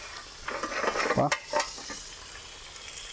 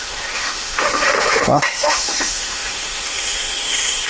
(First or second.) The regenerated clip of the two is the second